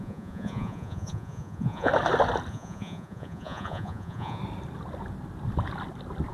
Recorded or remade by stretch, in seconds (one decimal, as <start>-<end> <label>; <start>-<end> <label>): 0.0-1.9 remade; 1.9-2.5 recorded; 2.5-4.4 remade; 4.4-6.3 recorded